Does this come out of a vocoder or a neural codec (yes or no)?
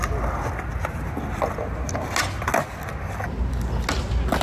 no